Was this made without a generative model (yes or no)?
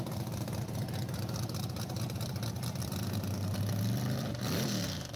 no